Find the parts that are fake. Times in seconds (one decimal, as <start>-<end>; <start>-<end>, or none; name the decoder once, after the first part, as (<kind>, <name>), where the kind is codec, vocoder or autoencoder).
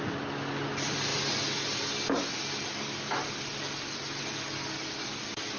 none